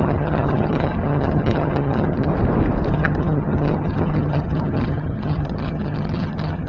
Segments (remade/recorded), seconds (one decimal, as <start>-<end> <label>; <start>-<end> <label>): 0.0-2.3 remade; 2.3-2.9 recorded; 2.9-6.7 remade